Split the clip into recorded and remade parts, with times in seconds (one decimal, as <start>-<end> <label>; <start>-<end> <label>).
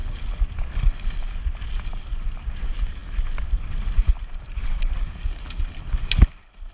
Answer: 0.0-6.7 recorded